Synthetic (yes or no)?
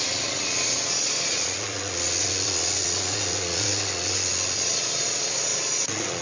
yes